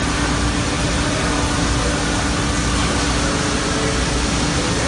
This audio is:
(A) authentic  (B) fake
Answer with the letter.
A